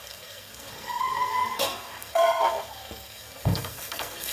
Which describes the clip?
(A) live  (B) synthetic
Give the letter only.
B